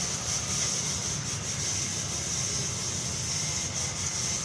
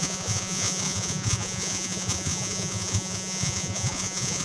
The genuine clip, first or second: first